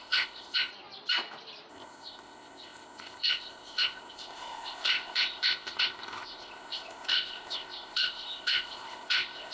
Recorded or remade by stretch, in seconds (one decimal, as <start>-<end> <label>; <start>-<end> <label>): 0.0-0.7 remade; 0.7-1.7 recorded; 1.7-9.5 remade